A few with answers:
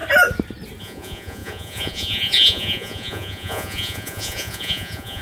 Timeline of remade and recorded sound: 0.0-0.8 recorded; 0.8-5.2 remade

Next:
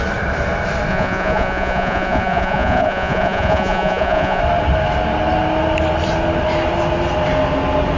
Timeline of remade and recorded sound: 0.0-0.9 recorded; 0.9-4.4 remade; 4.4-8.0 recorded

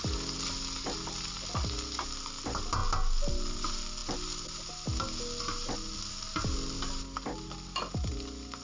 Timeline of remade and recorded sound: 0.0-8.6 recorded

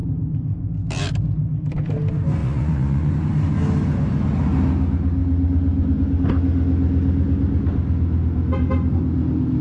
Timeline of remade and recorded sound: 0.0-2.4 recorded; 2.4-3.1 remade; 3.1-9.6 recorded